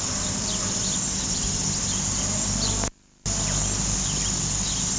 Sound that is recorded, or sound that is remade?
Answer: recorded